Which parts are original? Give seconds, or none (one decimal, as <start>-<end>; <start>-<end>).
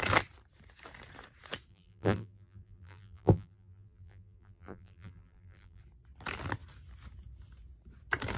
0.0-1.7; 5.8-8.4